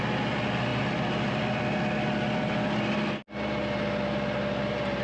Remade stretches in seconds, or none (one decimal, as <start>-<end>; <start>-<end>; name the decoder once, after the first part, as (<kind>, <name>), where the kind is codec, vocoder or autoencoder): 0.7-1.6 (vocoder, BigVGAN v2)